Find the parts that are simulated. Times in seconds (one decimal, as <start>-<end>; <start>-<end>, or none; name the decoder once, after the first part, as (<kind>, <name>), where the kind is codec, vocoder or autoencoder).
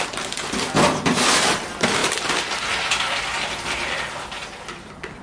none